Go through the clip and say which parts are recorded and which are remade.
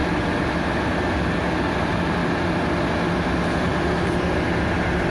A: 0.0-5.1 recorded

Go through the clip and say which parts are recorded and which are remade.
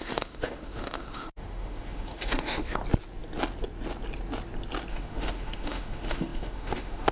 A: 0.0-2.8 remade; 2.8-4.9 recorded; 4.9-7.1 remade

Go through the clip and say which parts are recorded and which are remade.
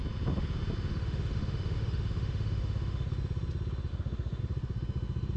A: 0.0-0.9 recorded; 0.9-3.1 remade; 3.1-3.9 recorded; 3.9-4.4 remade; 4.4-5.4 recorded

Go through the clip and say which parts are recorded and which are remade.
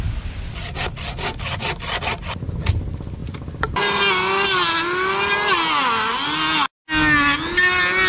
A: 0.0-8.1 recorded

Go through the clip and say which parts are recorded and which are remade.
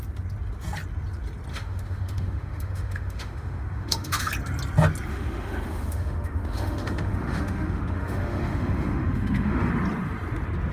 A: 0.0-1.5 recorded; 1.5-4.3 remade; 4.3-5.1 recorded; 5.1-9.7 remade; 9.7-10.7 recorded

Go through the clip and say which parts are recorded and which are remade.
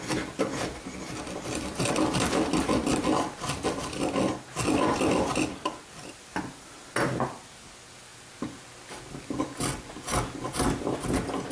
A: 0.0-11.5 recorded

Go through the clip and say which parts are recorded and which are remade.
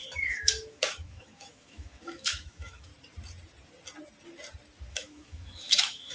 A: 0.0-2.9 remade; 2.9-4.9 recorded; 4.9-6.1 remade